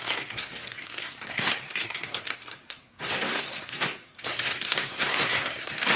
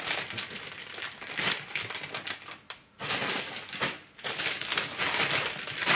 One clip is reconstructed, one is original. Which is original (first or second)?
second